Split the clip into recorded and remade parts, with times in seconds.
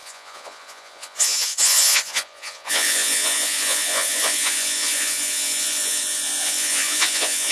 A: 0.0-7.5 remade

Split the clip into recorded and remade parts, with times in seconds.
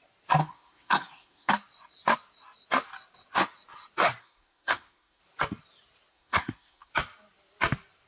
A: 0.0-0.4 recorded; 0.4-1.5 remade; 1.5-4.2 recorded; 4.2-5.2 remade; 5.2-6.1 recorded; 6.1-6.9 remade; 6.9-8.1 recorded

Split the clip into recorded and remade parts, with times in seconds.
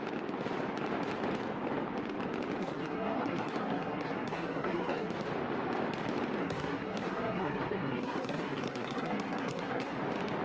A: 0.0-2.6 recorded; 2.6-5.1 remade; 5.1-6.4 recorded; 6.4-10.0 remade; 10.0-10.4 recorded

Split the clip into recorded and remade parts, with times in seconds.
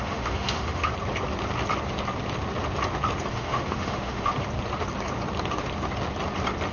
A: 0.0-0.9 remade; 0.9-3.3 recorded; 3.3-4.3 remade; 4.3-6.7 recorded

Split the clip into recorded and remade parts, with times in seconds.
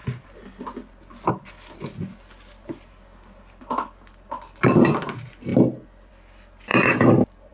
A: 0.0-7.5 recorded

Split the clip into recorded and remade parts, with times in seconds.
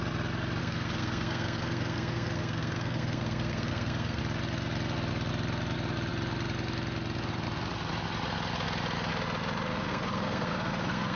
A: 0.0-0.6 recorded; 0.6-4.2 remade; 4.2-9.7 recorded; 9.7-11.2 remade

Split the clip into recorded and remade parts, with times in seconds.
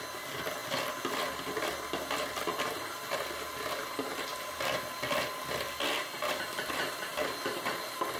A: 0.0-8.2 recorded